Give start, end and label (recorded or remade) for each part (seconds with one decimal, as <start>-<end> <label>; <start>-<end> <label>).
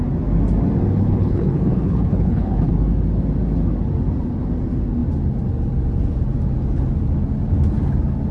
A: 0.0-1.0 recorded; 1.0-2.7 remade; 2.7-8.3 recorded